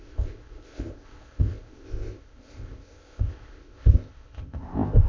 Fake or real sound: fake